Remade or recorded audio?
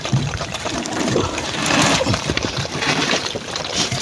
remade